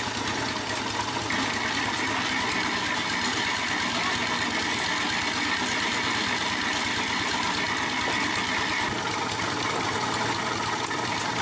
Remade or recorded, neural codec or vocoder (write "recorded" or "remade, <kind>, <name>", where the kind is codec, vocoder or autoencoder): recorded